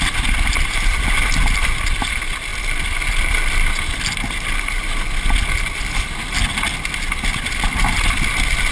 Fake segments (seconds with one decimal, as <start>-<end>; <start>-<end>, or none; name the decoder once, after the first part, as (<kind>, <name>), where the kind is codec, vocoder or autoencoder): none